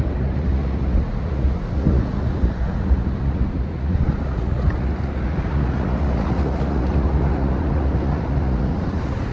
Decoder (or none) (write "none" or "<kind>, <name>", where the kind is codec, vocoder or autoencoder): vocoder, Vocos